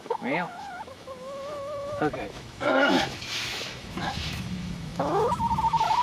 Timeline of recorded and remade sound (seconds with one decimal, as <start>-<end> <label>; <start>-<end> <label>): 0.0-6.0 remade